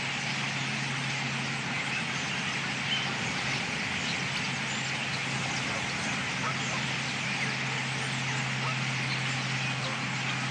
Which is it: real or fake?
real